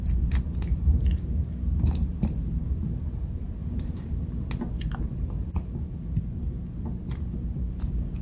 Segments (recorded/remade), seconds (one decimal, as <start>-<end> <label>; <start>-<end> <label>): 0.0-8.2 recorded